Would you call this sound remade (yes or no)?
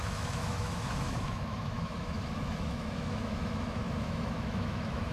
yes